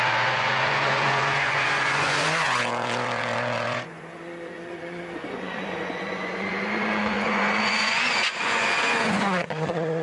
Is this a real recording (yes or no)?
no